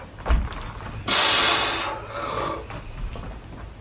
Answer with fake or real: real